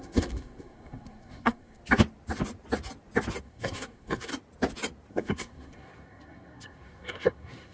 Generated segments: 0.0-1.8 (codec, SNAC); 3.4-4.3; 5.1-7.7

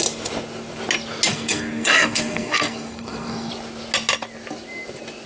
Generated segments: 1.3-3.5 (codec, SNAC)

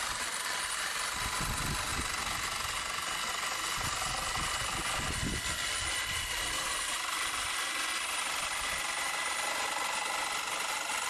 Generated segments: none

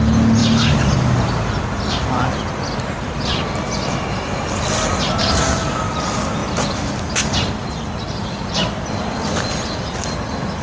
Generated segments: none

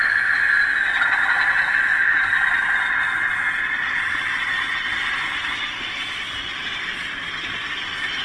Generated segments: none